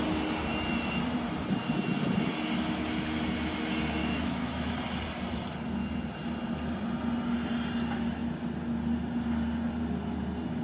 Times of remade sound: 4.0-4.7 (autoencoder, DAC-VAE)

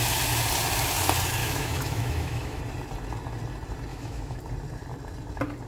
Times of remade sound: 1.4-2.6 (autoencoder, DAC-VAE); 3.9-4.4

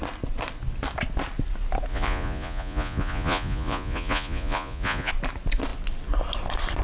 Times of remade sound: 1.9-5.1 (vocoder, Vocos)

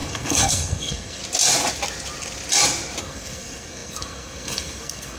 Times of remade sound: 0.0-1.2 (codec, SNAC); 3.0-5.2